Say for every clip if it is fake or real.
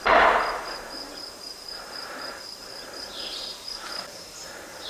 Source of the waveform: fake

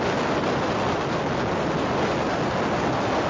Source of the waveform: real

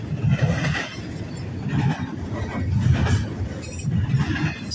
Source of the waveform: real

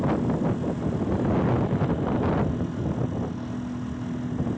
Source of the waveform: real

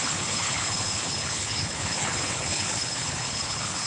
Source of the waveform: fake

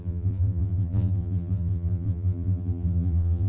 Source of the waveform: fake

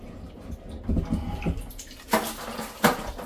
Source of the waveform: real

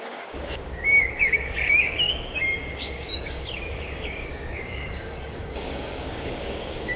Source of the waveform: fake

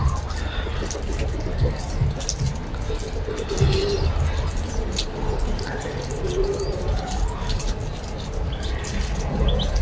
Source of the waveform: real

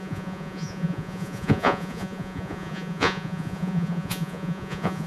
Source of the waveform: fake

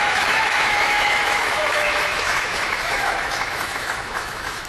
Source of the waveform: fake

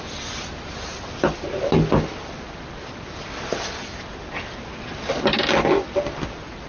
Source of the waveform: real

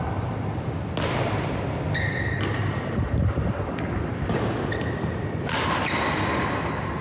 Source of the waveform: real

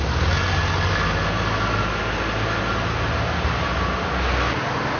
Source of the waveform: real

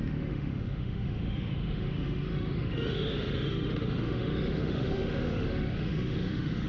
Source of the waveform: fake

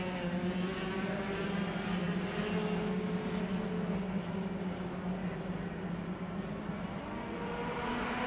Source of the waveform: real